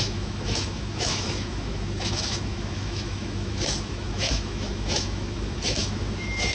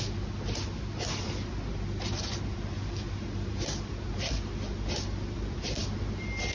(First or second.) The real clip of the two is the second